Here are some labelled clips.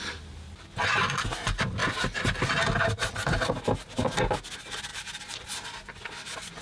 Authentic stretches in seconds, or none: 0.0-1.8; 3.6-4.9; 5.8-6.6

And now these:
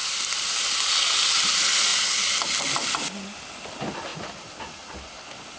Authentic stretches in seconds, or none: 1.1-1.9; 2.6-5.6

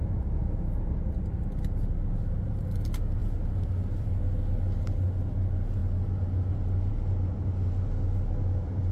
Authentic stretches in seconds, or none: 0.0-8.9

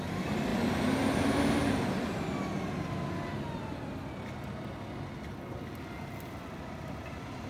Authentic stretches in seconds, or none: 0.0-7.5